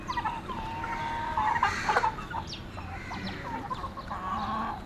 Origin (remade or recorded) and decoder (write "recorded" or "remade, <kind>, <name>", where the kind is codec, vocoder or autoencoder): recorded